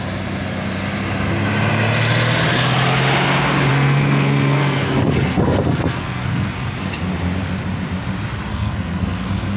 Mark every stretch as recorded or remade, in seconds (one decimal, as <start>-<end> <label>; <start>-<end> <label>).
0.0-3.7 recorded; 3.7-6.9 remade; 6.9-8.5 recorded; 8.5-9.6 remade